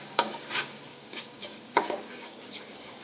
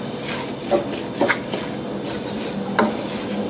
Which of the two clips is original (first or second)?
second